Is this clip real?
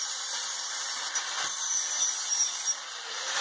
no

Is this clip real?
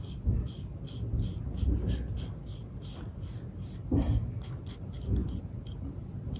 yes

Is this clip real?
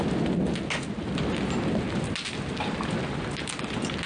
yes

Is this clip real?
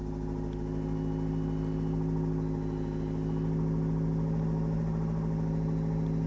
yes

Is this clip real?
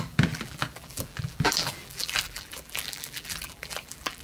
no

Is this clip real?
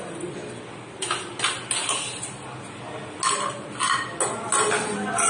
yes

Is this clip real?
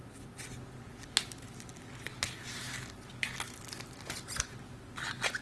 yes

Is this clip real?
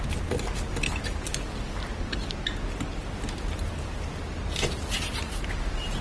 yes